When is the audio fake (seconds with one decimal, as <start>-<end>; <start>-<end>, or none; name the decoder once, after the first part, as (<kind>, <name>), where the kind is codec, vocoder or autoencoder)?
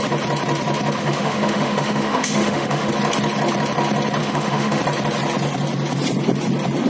1.0-2.9 (autoencoder, DAC-VAE); 4.2-4.8